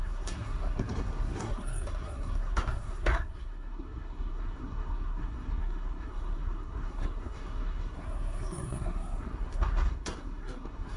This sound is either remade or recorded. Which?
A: remade